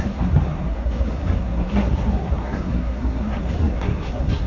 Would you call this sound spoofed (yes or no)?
yes